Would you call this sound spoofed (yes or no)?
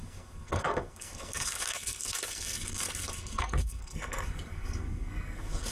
yes